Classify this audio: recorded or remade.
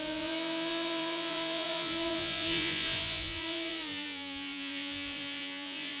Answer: remade